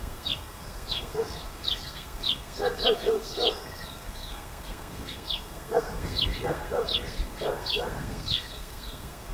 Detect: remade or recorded remade